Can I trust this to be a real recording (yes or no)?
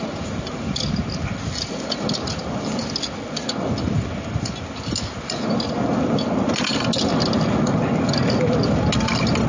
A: yes